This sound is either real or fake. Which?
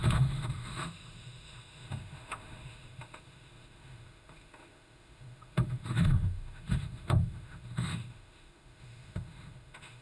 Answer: fake